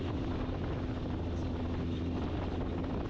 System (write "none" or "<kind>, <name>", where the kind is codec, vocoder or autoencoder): none